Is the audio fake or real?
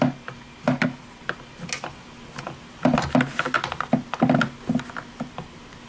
real